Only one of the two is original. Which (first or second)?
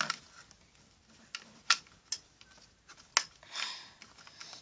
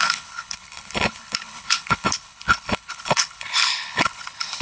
first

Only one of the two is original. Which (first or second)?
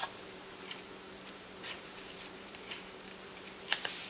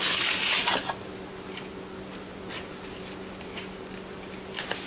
second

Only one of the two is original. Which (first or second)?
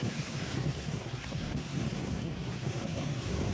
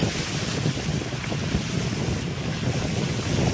second